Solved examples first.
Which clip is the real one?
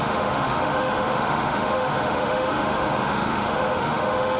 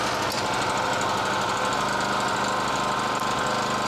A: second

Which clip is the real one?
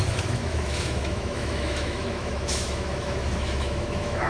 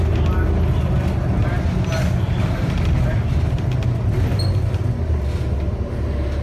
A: second